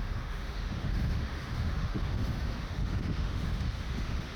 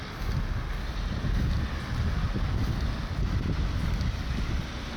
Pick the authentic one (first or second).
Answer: second